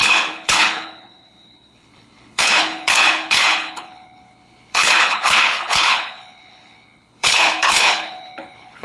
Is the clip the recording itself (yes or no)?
no